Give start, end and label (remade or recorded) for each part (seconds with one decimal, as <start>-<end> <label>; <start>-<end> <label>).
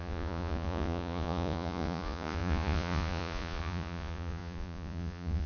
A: 0.0-5.5 remade